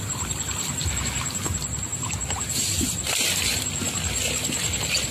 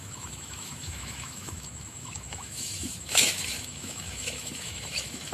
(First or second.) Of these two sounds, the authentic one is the first